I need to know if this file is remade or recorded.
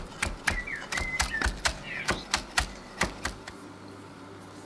recorded